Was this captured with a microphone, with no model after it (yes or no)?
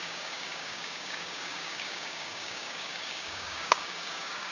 no